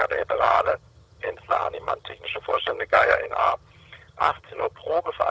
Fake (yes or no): yes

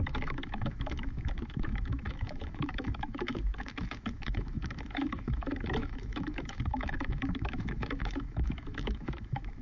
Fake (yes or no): yes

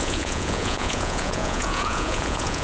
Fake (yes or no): yes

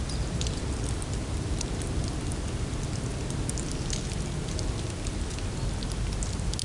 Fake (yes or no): no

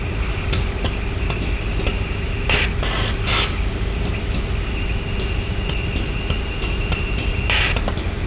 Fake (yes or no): no